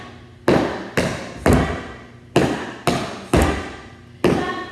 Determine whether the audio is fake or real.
real